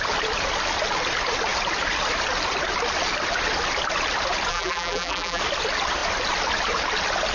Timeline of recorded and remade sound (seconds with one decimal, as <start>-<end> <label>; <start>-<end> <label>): 0.0-4.5 recorded; 4.5-5.4 remade; 5.4-7.3 recorded